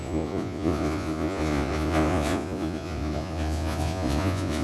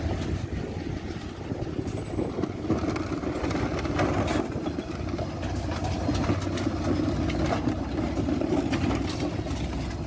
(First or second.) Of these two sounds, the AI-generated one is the first